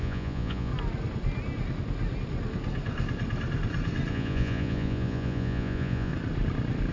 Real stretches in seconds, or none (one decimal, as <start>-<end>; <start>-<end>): 0.7-4.1; 6.1-6.9